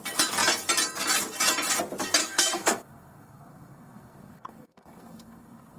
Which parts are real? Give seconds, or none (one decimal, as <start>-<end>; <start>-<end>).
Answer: 0.0-2.2